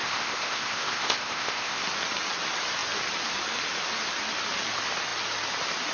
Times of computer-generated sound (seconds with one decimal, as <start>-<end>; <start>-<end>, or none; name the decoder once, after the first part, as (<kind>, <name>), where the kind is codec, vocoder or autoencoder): 0.0-1.8 (codec, ZipCodec)